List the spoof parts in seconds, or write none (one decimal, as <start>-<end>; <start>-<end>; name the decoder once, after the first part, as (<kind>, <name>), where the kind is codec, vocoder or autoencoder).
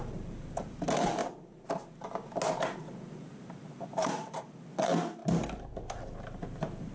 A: 0.0-1.2 (vocoder, BigVGAN v2); 3.1-5.2; 6.0-6.9